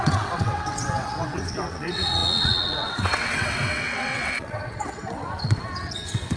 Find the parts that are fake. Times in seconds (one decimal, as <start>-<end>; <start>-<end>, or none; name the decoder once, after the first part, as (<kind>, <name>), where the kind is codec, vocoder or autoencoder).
0.0-6.4 (vocoder, WaveNeXt)